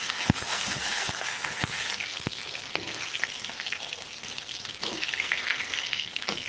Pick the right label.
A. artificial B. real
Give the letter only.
A